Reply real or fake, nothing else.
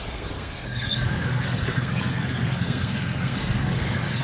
fake